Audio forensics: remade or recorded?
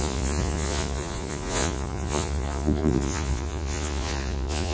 remade